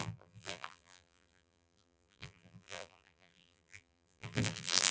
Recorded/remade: remade